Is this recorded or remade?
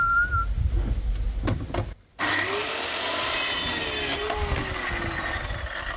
recorded